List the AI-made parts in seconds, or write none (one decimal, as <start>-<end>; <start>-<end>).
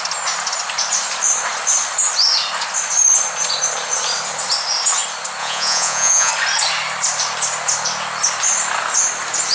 5.4-6.3